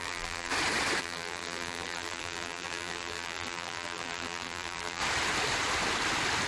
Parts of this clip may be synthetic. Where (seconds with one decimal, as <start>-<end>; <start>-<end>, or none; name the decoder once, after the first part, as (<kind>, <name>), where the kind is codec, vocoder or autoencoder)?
0.0-0.5 (vocoder, BigVGAN v2); 1.0-5.0